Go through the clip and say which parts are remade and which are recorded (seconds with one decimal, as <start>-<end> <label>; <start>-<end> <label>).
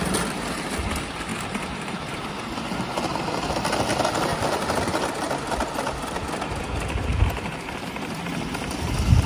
0.0-1.3 recorded; 1.3-2.1 remade; 2.1-4.3 recorded; 4.3-4.9 remade; 4.9-7.1 recorded; 7.1-8.3 remade; 8.3-9.3 recorded